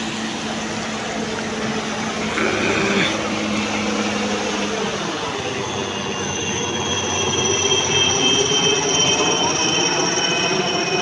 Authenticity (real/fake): real